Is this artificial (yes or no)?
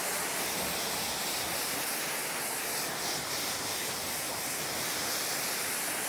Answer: no